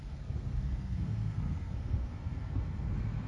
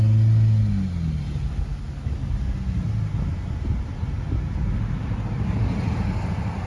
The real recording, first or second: second